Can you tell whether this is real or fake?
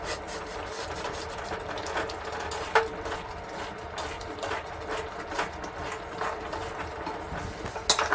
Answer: real